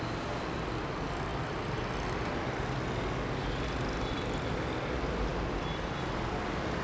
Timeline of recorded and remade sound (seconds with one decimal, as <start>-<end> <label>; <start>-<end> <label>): 0.0-6.8 recorded